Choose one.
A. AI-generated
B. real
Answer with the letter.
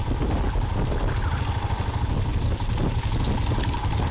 B